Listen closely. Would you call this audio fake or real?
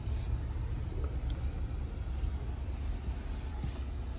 real